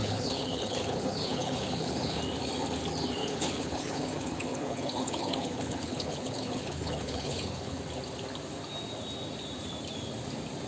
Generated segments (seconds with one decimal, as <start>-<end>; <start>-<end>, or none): 0.0-2.2; 3.2-7.8